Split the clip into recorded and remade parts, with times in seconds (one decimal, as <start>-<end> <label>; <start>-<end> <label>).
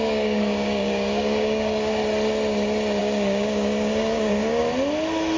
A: 0.0-2.0 remade; 2.0-3.0 recorded; 3.0-4.6 remade; 4.6-5.4 recorded